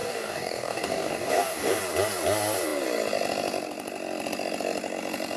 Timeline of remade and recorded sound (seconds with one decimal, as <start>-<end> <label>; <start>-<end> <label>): 0.0-1.8 remade; 1.8-5.4 recorded

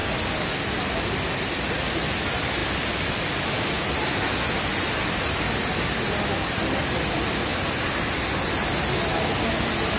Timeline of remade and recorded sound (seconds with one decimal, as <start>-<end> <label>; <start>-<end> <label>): 0.0-10.0 recorded

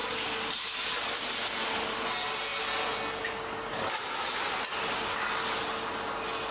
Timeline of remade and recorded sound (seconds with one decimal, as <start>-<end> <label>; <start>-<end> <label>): 0.0-6.5 recorded

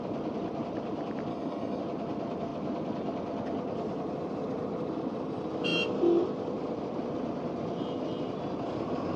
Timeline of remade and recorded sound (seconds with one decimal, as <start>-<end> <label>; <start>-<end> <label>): 0.0-1.3 recorded; 1.3-1.8 remade; 1.8-9.2 recorded

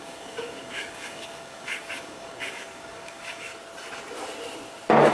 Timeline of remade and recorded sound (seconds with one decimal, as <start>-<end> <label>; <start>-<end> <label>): 0.0-3.5 remade; 3.5-5.1 recorded

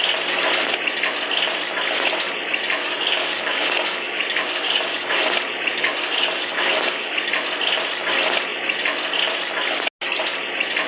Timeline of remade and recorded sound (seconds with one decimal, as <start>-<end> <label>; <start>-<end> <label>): 0.0-2.8 recorded; 2.8-5.2 remade; 5.2-5.7 recorded; 5.7-7.3 remade; 7.3-10.9 recorded

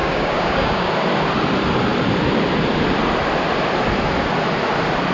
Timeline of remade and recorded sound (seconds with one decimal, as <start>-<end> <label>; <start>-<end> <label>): 0.0-0.9 remade; 0.9-5.1 recorded